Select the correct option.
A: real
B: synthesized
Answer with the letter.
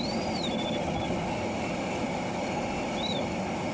A